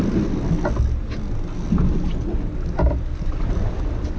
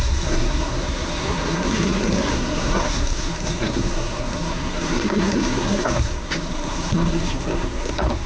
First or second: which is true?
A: first